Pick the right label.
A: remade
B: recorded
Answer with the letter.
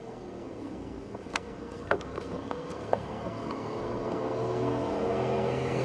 A